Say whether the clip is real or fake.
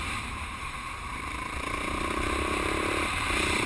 fake